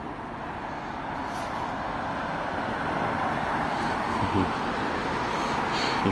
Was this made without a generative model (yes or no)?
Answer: yes